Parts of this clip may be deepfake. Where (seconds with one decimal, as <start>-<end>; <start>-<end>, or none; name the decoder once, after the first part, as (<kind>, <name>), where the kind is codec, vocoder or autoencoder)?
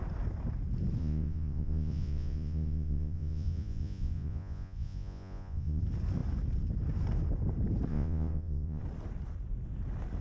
1.0-5.8 (vocoder, Vocos); 7.9-8.8